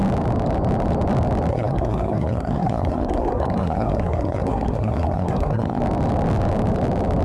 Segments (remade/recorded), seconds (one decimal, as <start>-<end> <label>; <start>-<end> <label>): 0.0-1.5 recorded; 1.5-5.8 remade; 5.8-7.2 recorded